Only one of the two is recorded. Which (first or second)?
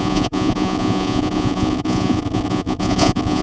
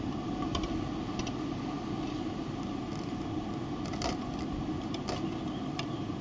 second